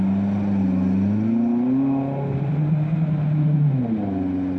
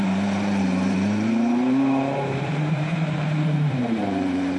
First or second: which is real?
first